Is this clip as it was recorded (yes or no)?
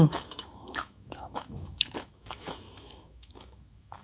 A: no